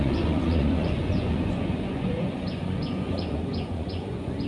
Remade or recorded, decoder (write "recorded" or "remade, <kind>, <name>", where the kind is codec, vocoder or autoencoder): remade, vocoder, Vocos